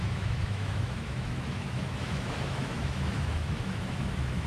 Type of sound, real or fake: fake